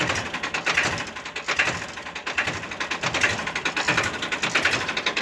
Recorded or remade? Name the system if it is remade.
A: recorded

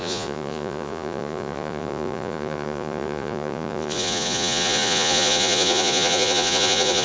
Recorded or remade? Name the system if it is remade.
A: remade, vocoder, Vocos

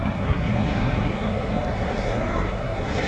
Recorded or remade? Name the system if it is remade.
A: remade, codec, SNAC